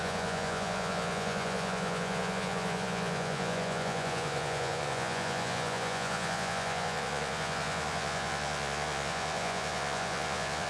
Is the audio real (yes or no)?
no